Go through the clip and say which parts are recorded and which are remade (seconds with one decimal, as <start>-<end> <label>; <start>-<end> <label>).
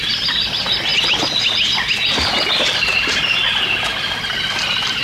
0.0-5.0 recorded